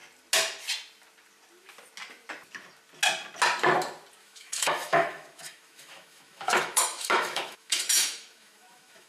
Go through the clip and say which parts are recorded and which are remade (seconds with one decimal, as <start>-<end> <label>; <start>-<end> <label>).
0.0-4.2 recorded; 4.2-9.1 remade